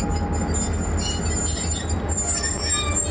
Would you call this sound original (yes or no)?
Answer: yes